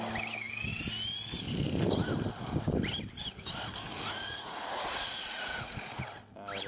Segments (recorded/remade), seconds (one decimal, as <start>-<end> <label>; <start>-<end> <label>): 0.0-3.9 recorded; 3.9-6.0 remade; 6.0-6.7 recorded